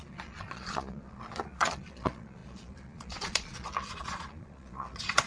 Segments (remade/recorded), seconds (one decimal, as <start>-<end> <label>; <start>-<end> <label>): 0.0-5.3 remade